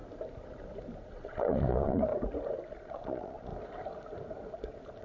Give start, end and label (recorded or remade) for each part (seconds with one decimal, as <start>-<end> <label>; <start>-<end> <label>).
0.0-1.0 recorded; 1.0-2.1 remade; 2.1-2.7 recorded; 2.7-3.5 remade; 3.5-5.0 recorded